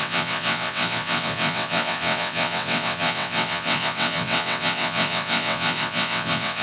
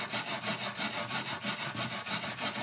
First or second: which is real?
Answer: second